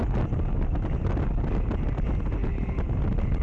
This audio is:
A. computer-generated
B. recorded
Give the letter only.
B